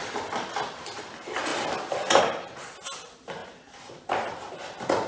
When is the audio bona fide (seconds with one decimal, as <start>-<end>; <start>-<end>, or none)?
0.0-0.8; 1.5-2.2

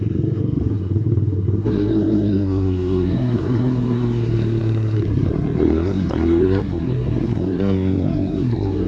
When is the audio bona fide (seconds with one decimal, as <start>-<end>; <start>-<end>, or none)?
none

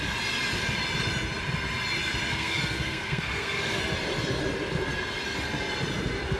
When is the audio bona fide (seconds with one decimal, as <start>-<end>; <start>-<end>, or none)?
0.0-2.3; 3.8-6.4

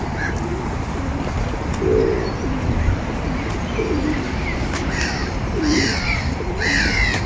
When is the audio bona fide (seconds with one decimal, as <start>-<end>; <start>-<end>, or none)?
0.0-4.5; 6.0-7.3

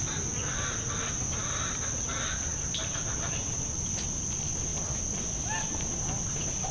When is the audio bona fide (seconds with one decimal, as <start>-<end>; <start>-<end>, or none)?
0.0-6.7

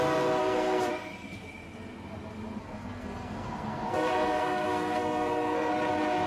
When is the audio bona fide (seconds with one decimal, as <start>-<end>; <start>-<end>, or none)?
0.0-0.4; 0.9-2.6; 5.7-6.3

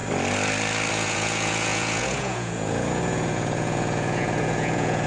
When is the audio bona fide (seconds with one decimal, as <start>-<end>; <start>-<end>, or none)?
0.0-0.9

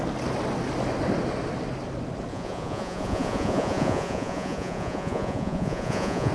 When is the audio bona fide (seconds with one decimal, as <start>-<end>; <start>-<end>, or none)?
0.0-2.3